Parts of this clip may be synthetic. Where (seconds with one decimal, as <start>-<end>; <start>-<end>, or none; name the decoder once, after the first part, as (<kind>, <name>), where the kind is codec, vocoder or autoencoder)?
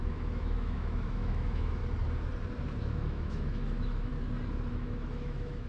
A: 0.0-1.8 (autoencoder, DAC-VAE); 2.8-4.1; 4.7-5.7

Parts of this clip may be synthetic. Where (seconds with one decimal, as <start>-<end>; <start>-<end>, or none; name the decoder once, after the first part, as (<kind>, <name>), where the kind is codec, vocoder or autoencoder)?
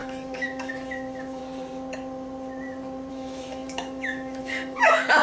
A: 0.0-1.4 (autoencoder, DAC-VAE); 3.1-5.2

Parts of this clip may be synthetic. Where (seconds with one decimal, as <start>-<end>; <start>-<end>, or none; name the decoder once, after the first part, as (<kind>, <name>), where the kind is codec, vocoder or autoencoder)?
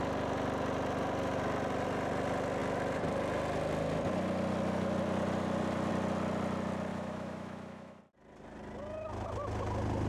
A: 6.9-8.0 (autoencoder, DAC-VAE)